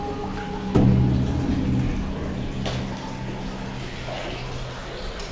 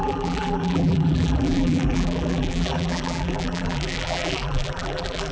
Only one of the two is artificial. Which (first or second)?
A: second